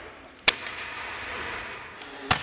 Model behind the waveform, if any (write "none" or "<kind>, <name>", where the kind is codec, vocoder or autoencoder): none